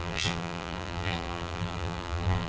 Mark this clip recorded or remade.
remade